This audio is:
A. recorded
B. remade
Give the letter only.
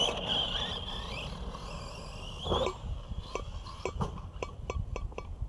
A